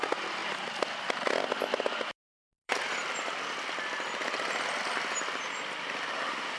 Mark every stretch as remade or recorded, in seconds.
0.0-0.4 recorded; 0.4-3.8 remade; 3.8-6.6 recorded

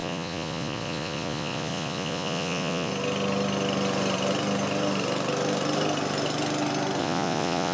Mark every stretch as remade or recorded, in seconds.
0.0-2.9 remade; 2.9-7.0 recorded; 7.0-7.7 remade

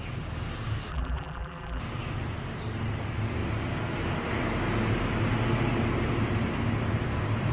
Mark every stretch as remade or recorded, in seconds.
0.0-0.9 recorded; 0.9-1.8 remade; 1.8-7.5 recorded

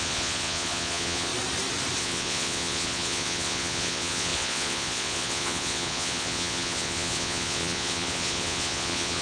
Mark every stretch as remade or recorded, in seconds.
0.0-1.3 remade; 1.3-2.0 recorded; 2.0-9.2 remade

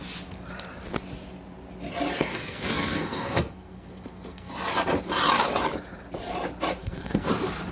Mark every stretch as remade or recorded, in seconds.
0.0-2.3 recorded; 2.3-4.5 remade; 4.5-6.8 recorded; 6.8-7.3 remade; 7.3-7.7 recorded